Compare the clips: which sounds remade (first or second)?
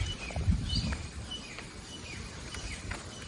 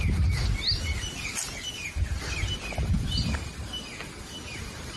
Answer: first